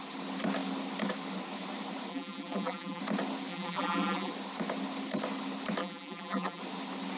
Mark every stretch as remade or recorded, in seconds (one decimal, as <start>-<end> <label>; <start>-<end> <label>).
0.0-2.1 recorded; 2.1-3.0 remade; 3.0-3.5 recorded; 3.5-4.3 remade; 4.3-5.8 recorded; 5.8-6.6 remade; 6.6-7.2 recorded